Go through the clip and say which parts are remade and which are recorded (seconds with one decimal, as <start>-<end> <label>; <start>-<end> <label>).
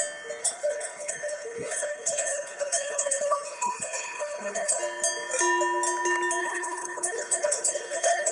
0.0-0.4 recorded; 0.4-4.8 remade; 4.8-6.4 recorded; 6.4-8.3 remade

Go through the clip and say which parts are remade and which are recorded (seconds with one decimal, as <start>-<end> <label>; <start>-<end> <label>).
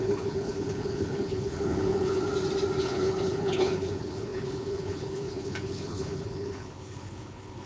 0.0-2.3 remade; 2.3-2.8 recorded; 2.8-7.7 remade